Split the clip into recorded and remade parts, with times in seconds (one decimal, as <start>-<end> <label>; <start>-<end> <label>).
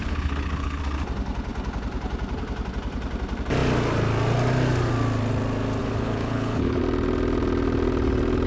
0.0-0.8 remade; 0.8-5.8 recorded; 5.8-6.8 remade; 6.8-8.5 recorded